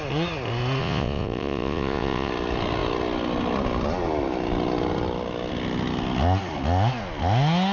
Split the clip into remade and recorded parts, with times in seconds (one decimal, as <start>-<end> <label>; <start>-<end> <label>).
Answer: 0.0-0.8 recorded; 0.8-2.3 remade; 2.3-7.7 recorded